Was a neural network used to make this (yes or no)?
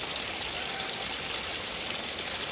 no